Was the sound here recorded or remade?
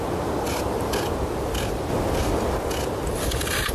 recorded